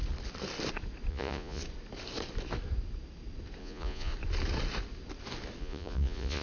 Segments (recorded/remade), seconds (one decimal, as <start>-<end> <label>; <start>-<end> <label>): 0.0-1.1 recorded; 1.1-1.6 remade; 1.6-3.6 recorded; 3.6-4.1 remade; 4.1-5.6 recorded; 5.6-6.4 remade